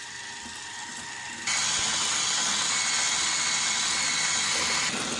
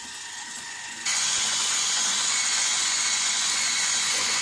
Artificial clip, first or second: second